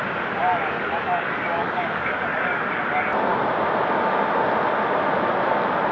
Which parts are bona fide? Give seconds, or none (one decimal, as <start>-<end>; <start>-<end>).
0.0-0.5; 2.8-5.9